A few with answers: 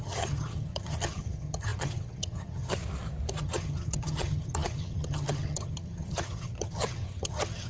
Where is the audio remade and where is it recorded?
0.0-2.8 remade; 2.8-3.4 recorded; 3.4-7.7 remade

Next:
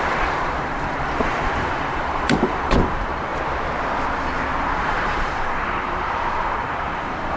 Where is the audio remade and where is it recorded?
0.0-3.3 remade; 3.3-4.6 recorded; 4.6-7.4 remade

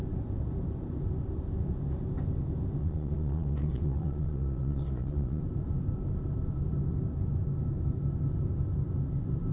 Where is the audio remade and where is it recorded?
0.0-2.8 recorded; 2.8-5.4 remade; 5.4-9.5 recorded

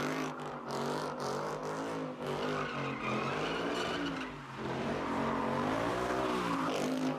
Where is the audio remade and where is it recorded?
0.0-1.6 remade; 1.6-5.9 recorded; 5.9-7.2 remade

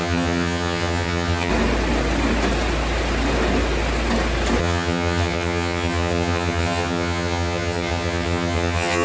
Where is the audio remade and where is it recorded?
0.0-1.5 remade; 1.5-4.6 recorded; 4.6-9.0 remade